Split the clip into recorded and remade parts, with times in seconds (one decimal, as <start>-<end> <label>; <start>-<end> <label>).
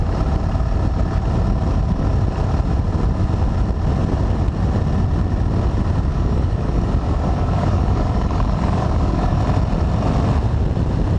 0.0-6.1 recorded; 6.1-9.4 remade; 9.4-11.2 recorded